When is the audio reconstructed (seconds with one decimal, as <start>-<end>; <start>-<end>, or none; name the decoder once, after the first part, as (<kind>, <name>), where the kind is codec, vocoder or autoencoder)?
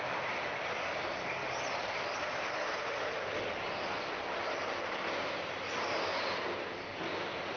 none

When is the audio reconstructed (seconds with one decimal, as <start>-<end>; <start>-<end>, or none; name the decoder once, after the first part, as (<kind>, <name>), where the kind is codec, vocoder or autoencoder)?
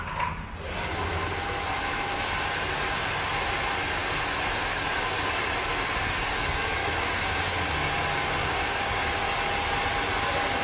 6.8-7.6 (codec, DAC); 8.4-9.2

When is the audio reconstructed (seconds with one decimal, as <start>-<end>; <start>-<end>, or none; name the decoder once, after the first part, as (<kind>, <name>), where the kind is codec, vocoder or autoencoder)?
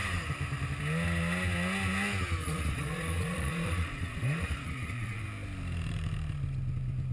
2.4-5.2 (vocoder, Vocos)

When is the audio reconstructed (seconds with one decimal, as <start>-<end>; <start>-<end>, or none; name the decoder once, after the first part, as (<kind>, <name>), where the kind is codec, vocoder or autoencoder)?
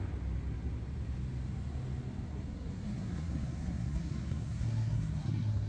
2.3-5.7 (codec, SNAC)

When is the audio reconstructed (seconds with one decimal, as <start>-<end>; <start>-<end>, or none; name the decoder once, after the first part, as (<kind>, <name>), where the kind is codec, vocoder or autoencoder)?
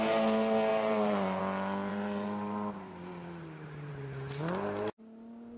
0.7-1.4 (vocoder, BigVGAN v2); 1.9-3.9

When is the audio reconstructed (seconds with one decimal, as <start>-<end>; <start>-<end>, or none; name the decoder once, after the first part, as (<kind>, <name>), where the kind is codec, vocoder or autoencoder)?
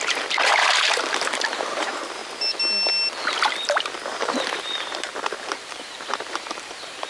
0.0-2.2 (vocoder, BigVGAN v2); 4.0-7.1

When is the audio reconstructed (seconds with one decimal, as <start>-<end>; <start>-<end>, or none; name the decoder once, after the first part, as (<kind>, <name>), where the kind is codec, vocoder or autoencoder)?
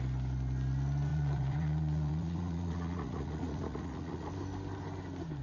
1.1-4.3 (vocoder, Vocos)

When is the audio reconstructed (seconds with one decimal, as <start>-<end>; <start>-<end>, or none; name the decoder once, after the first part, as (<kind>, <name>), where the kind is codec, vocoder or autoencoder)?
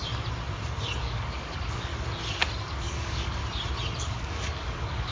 1.0-1.9 (codec, DAC); 2.6-3.4; 4.0-5.1